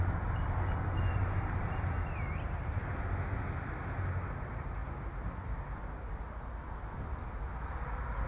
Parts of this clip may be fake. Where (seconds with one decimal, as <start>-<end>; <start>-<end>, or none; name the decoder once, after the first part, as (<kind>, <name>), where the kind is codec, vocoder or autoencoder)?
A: 1.1-3.4 (vocoder, BigVGAN v2)